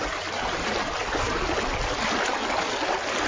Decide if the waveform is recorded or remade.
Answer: recorded